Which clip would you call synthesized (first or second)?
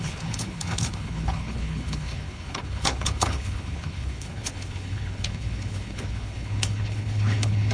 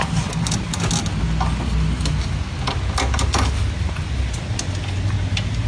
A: first